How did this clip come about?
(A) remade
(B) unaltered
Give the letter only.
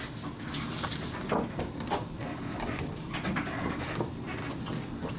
B